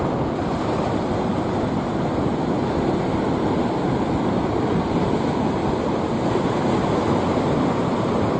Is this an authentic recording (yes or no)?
yes